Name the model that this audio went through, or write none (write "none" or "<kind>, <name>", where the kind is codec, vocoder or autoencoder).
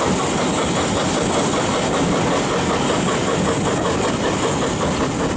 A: none